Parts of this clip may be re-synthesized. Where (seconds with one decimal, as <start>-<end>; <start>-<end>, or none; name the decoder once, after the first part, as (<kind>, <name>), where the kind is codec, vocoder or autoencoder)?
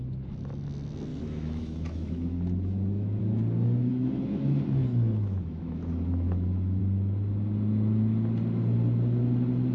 1.1-3.2 (autoencoder, DAC-VAE); 3.9-6.8